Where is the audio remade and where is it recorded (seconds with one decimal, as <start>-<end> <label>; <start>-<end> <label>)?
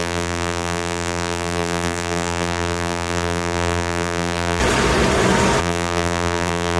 0.0-4.6 remade; 4.6-5.6 recorded; 5.6-6.8 remade